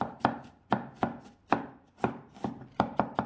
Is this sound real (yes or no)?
yes